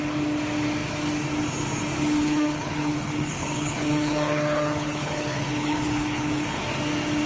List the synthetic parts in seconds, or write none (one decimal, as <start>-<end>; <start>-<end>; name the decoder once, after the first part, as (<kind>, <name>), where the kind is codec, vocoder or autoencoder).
2.2-6.6 (codec, HILCodec)